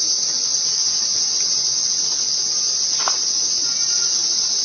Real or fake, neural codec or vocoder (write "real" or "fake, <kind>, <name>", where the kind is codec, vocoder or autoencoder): real